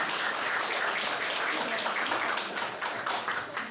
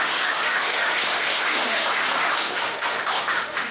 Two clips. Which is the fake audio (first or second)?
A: second